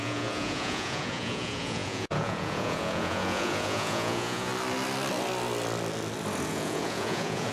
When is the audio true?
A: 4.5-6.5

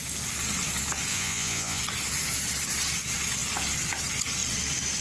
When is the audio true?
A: 0.0-1.1; 1.8-5.0

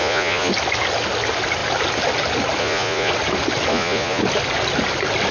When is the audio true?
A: 0.5-2.6; 3.1-3.7; 4.2-5.3

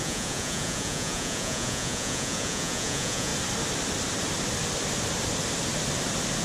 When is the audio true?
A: 3.3-6.4

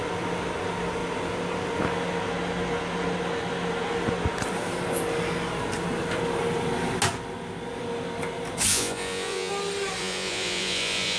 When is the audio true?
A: 0.0-8.7; 9.5-10.0

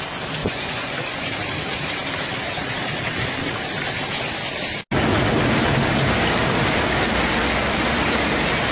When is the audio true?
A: 0.0-0.4; 1.3-8.7

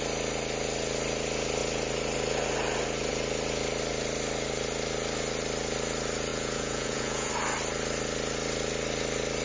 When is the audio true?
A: 0.0-6.3; 7.3-9.4